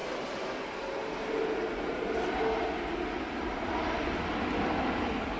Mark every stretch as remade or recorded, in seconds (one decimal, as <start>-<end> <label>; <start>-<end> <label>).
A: 0.0-5.4 recorded